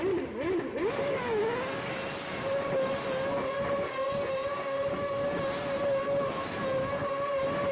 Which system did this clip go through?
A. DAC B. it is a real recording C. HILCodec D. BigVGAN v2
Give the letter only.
B